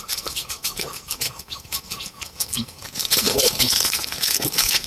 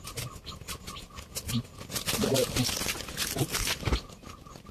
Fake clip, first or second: first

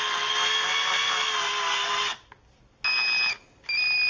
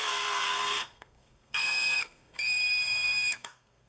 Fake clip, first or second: second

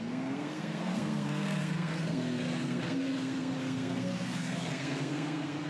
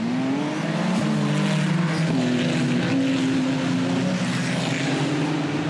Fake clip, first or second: first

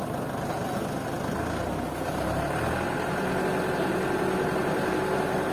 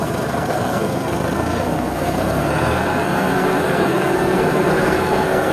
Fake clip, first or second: second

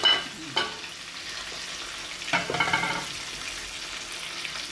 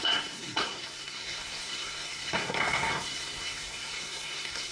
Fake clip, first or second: second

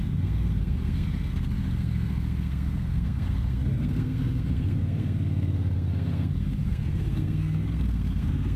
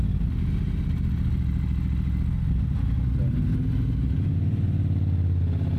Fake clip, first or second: first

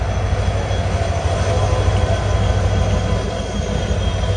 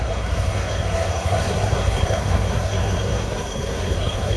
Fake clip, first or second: second